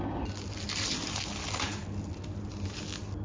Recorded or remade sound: recorded